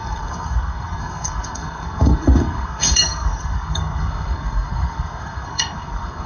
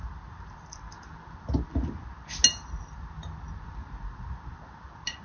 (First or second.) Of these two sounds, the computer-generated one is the first